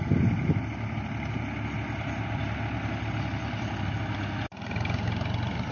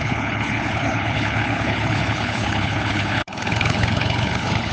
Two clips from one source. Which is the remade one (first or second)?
second